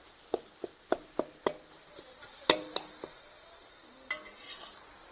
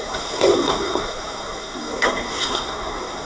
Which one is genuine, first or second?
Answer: first